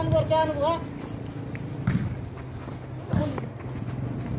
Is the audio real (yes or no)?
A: yes